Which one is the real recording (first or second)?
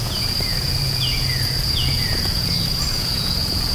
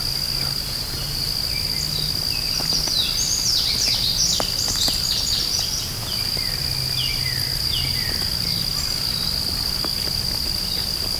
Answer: second